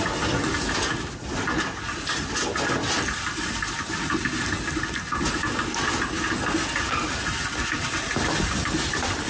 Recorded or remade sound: recorded